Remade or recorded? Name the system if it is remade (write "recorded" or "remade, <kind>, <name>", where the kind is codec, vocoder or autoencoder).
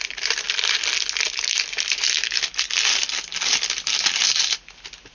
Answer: recorded